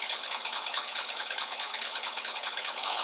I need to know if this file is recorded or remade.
remade